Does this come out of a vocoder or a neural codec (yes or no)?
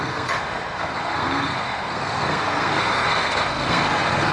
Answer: yes